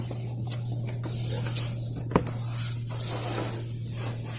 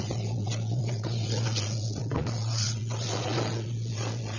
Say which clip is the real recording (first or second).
first